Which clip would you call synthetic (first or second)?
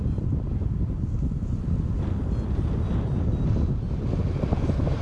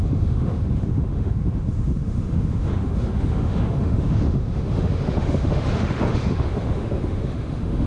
second